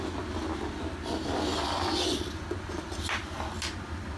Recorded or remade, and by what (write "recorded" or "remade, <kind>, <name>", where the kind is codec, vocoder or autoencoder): recorded